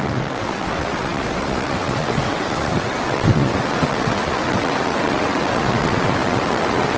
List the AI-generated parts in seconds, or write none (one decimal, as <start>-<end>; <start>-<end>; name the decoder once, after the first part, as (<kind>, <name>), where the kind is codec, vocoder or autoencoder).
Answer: 0.0-7.0 (vocoder, WaveNeXt)